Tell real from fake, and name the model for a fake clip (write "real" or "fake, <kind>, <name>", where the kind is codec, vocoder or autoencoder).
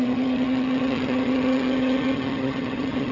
fake, vocoder, HiFi-GAN